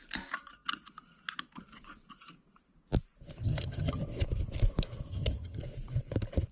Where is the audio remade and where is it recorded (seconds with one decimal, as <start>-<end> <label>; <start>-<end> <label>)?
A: 0.0-3.4 recorded; 3.4-4.0 remade; 4.0-5.1 recorded; 5.1-5.6 remade; 5.6-6.5 recorded